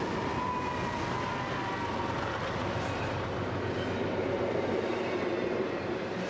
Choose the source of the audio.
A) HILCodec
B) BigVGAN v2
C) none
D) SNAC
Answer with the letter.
C